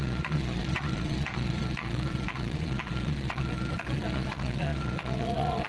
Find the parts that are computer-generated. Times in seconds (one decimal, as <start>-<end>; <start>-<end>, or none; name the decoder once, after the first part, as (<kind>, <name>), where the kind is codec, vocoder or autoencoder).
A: 0.0-5.7 (vocoder, Vocos)